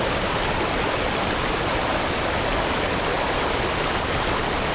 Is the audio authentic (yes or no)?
yes